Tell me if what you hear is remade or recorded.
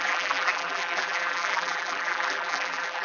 remade